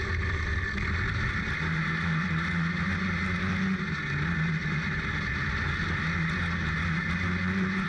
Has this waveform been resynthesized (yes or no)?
no